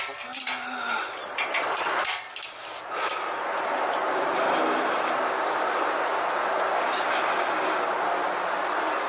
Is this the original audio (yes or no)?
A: yes